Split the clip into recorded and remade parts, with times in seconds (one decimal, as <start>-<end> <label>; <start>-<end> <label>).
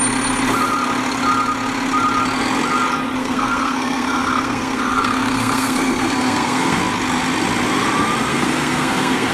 0.0-3.2 recorded; 3.2-6.8 remade; 6.8-8.3 recorded; 8.3-9.3 remade